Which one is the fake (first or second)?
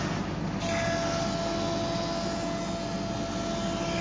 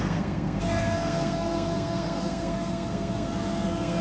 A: second